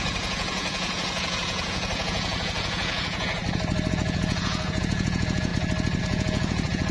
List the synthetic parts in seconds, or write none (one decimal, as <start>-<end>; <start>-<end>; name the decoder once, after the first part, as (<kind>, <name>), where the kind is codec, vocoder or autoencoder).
0.0-3.4 (vocoder, Vocos); 3.9-5.5; 6.0-6.9